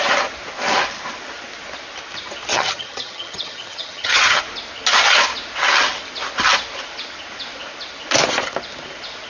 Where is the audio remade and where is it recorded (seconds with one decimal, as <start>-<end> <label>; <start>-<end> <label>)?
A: 0.0-2.5 recorded; 2.5-4.4 remade; 4.4-9.3 recorded